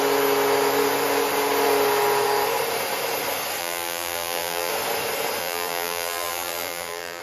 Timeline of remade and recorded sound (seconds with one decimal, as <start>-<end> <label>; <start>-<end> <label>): 0.0-3.6 recorded; 3.6-4.7 remade; 4.7-5.4 recorded; 5.4-7.2 remade